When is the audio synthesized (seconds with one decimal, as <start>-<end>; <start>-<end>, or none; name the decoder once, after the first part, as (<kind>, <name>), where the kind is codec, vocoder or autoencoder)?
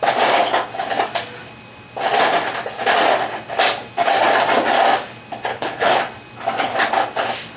5.5-6.0 (codec, HILCodec)